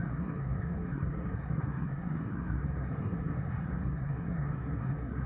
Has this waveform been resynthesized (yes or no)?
yes